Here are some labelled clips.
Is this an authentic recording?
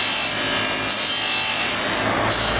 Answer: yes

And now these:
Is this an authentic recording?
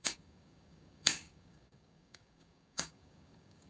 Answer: no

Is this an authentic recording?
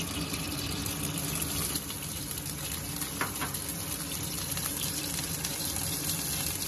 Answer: yes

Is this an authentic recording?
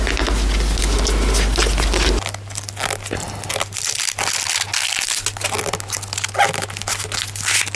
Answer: yes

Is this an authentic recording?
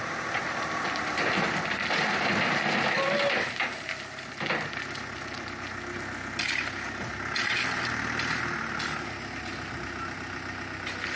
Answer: yes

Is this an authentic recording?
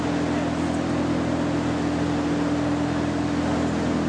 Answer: yes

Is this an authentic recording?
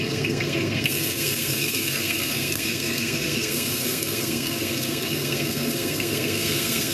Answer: no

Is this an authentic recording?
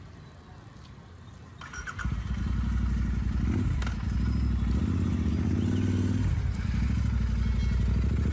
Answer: yes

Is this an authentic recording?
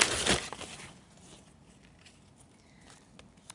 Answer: yes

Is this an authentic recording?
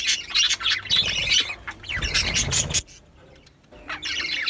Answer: yes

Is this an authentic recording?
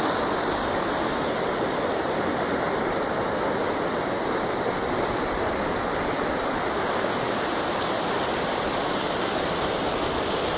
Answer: yes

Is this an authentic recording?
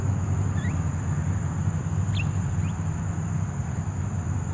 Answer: yes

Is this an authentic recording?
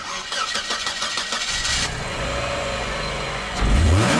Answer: no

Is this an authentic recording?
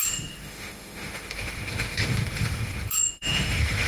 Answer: no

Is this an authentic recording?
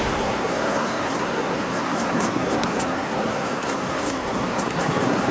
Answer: no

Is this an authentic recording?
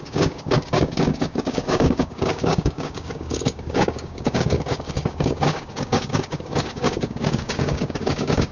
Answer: no